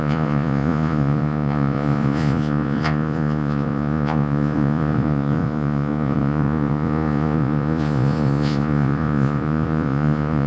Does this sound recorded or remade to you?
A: remade